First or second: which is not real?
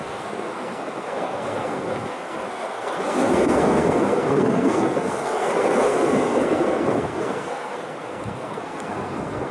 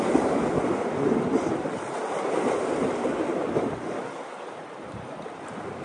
first